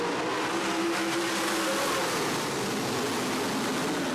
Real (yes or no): yes